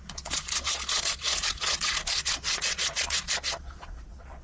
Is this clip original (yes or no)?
no